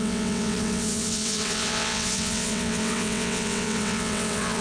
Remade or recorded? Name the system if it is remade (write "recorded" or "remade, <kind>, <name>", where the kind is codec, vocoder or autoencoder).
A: remade, vocoder, WaveNeXt